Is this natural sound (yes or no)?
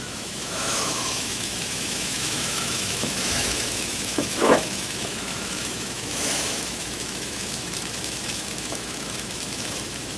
no